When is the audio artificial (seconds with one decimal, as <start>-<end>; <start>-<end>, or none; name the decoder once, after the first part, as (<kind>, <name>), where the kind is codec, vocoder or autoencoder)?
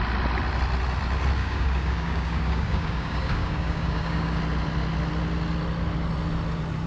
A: 1.4-4.4 (codec, DAC)